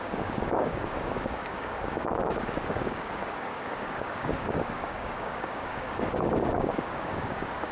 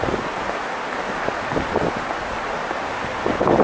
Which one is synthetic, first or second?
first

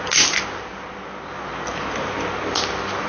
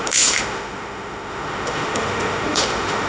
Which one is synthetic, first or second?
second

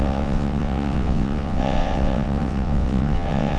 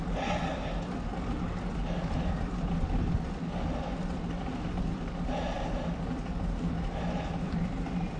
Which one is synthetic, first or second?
first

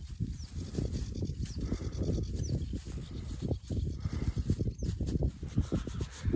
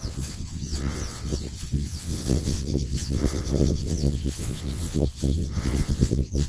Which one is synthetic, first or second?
second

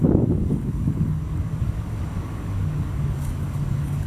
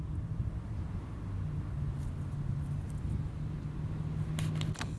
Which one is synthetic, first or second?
first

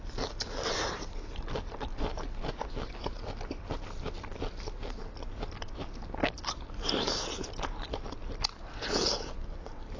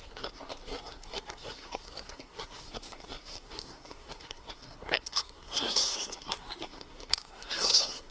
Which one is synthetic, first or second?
second